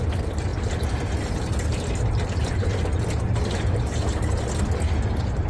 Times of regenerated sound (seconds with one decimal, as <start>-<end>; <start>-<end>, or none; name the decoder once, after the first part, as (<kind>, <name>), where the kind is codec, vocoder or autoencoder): none